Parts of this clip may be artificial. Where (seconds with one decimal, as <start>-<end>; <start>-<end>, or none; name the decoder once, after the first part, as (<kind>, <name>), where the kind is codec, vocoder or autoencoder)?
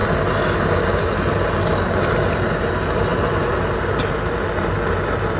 none